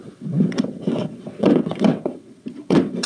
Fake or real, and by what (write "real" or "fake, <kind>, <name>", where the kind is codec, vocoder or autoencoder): fake, vocoder, WaveNeXt